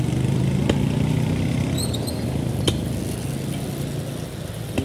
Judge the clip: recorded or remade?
recorded